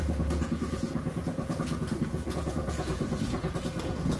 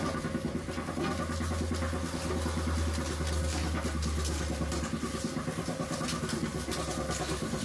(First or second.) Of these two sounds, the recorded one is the second